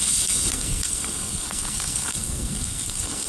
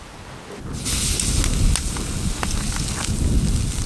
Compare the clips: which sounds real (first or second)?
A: second